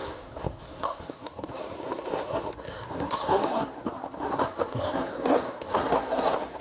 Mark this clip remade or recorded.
remade